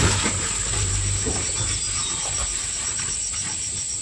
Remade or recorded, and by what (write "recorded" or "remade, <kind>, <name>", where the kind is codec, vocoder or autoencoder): remade, vocoder, BigVGAN v2